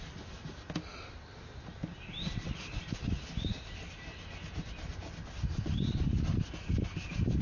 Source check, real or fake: real